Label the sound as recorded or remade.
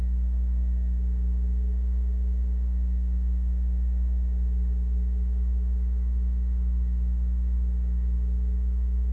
remade